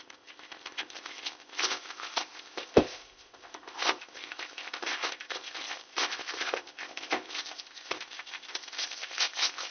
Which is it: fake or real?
fake